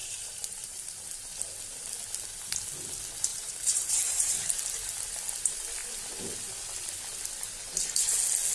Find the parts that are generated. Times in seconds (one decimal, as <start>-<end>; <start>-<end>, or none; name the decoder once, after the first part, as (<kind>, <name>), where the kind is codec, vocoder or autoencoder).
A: 0.0-1.1 (vocoder, BigVGAN v2); 3.3-4.3

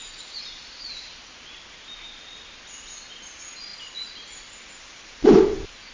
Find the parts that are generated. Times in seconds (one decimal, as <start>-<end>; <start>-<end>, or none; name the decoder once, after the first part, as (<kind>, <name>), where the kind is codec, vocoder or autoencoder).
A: 3.7-5.9 (vocoder, BigVGAN v2)